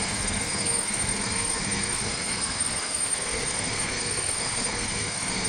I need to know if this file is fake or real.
fake